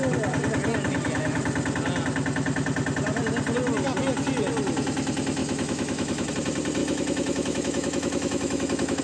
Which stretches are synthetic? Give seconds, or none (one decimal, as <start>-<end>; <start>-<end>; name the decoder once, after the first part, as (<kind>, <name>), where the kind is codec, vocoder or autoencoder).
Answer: 5.4-6.3 (autoencoder, DAC-VAE); 6.8-9.0